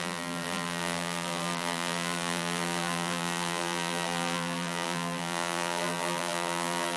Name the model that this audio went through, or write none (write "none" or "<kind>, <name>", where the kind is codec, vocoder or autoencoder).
vocoder, BigVGAN v2